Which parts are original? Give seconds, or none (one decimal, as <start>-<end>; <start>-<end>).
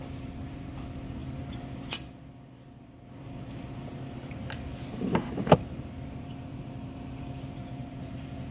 0.0-8.5